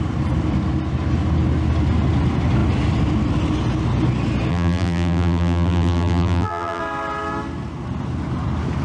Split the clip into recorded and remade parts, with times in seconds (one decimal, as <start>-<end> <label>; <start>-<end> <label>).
0.0-4.5 recorded; 4.5-6.8 remade; 6.8-8.8 recorded

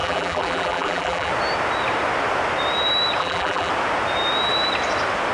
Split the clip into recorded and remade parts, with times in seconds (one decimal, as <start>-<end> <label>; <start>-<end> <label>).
0.0-1.3 remade; 1.3-3.2 recorded; 3.2-3.7 remade; 3.7-5.3 recorded

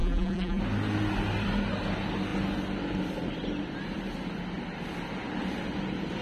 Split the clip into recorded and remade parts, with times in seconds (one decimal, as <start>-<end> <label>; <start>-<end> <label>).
0.0-0.6 remade; 0.6-6.2 recorded

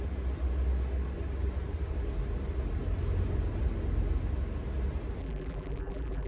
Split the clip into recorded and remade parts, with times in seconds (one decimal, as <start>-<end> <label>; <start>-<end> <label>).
0.0-5.2 recorded; 5.2-6.3 remade